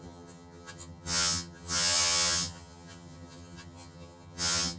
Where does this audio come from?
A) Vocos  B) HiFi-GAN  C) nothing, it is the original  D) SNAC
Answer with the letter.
B